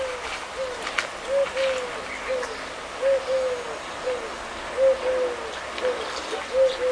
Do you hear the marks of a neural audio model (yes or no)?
no